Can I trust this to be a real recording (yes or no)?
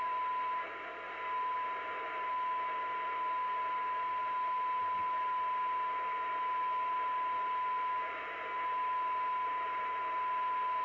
yes